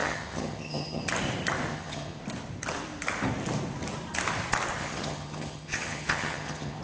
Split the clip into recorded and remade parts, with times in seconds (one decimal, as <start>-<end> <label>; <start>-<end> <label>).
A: 0.0-1.0 remade; 1.0-1.7 recorded; 1.7-2.2 remade; 2.2-4.8 recorded; 4.8-6.8 remade